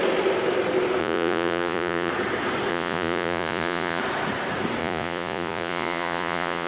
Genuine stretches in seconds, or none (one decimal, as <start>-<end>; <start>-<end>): 0.0-1.0; 2.1-2.7; 4.0-4.8